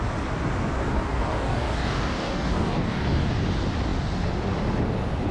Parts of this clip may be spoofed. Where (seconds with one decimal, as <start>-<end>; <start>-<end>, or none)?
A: 0.8-3.3